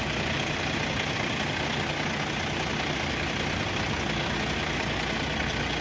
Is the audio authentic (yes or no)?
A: yes